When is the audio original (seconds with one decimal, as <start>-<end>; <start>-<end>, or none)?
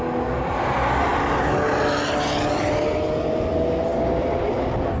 0.0-5.0